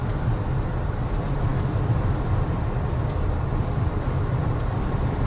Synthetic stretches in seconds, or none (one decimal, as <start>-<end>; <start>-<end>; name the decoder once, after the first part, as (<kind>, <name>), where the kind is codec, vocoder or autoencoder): none